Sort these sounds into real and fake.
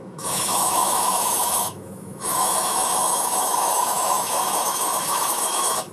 fake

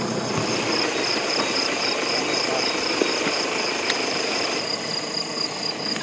fake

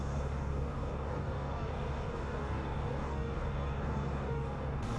fake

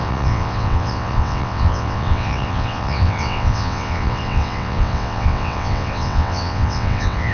fake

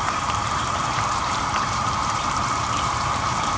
fake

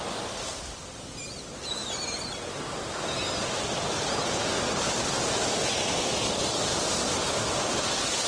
real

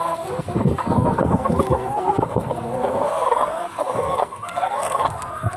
fake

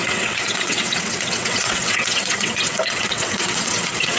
fake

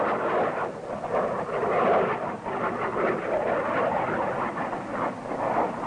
real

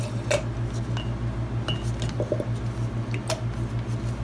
real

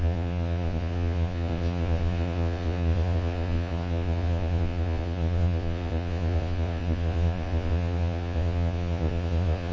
fake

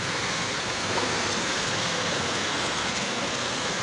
fake